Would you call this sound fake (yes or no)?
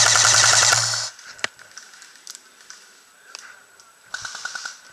no